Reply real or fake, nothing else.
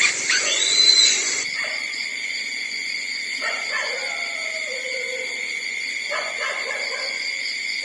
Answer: fake